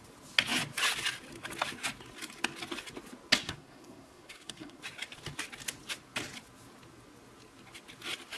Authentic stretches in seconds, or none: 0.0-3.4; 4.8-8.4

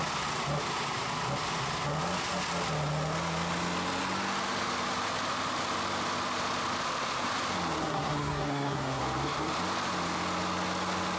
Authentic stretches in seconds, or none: 0.0-7.8; 9.0-11.2

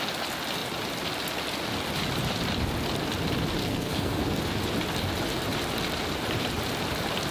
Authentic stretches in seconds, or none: 0.0-3.6; 4.4-7.3